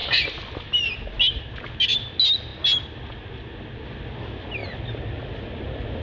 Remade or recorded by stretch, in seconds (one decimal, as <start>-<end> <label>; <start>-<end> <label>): 0.0-6.0 recorded